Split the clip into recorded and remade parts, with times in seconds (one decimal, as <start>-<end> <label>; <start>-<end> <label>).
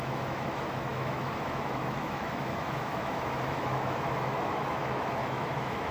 0.0-5.9 remade